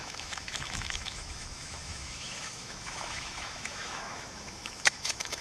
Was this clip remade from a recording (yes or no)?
yes